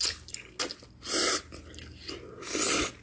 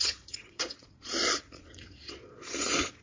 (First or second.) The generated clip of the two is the second